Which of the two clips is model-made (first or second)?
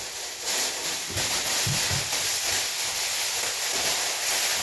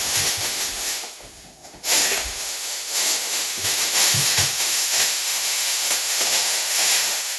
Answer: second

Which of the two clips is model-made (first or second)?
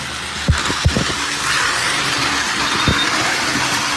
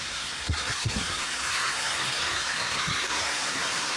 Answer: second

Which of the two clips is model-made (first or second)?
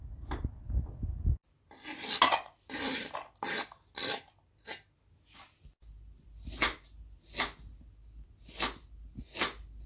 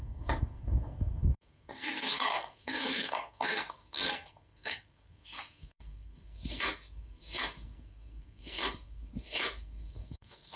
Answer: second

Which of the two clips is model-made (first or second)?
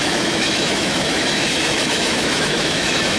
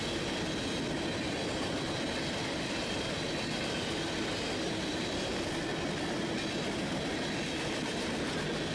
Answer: first